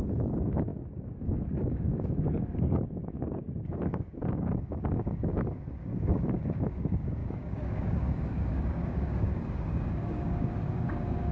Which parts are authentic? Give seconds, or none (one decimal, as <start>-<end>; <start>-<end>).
none